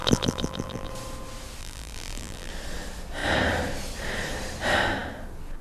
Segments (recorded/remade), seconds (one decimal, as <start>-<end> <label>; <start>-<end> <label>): 0.0-0.9 remade; 0.9-1.6 recorded; 1.6-2.5 remade; 2.5-5.6 recorded